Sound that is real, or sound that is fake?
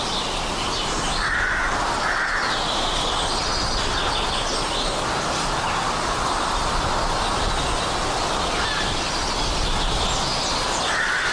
real